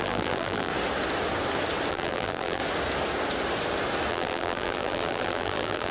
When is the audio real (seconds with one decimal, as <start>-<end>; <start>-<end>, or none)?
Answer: 0.7-1.9; 2.6-4.1